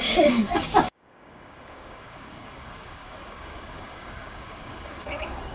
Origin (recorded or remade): remade